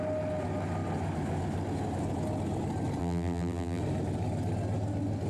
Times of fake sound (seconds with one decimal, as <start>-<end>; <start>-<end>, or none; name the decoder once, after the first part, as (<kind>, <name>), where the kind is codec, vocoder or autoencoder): 3.0-3.8 (vocoder, BigVGAN v2)